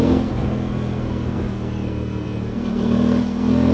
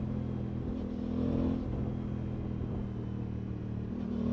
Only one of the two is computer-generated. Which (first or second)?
first